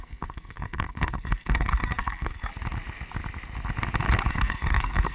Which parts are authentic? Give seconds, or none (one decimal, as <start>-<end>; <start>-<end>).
2.5-4.3